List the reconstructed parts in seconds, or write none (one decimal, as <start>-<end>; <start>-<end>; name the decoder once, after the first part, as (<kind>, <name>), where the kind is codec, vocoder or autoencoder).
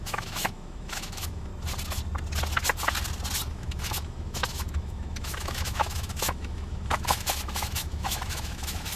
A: 0.0-1.5 (autoencoder, DAC-VAE); 3.5-9.0